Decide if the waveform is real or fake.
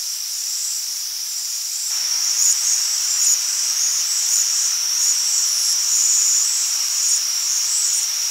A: fake